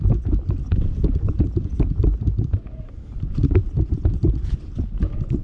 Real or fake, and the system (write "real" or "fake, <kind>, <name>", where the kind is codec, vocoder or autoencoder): real